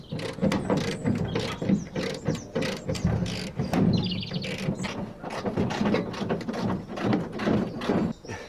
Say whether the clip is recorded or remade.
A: recorded